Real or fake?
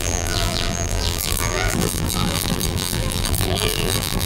fake